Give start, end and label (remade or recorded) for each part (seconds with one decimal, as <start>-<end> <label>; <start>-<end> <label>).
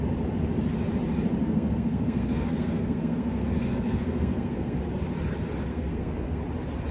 0.0-1.4 recorded; 1.4-4.8 remade; 4.8-5.7 recorded; 5.7-6.4 remade; 6.4-6.9 recorded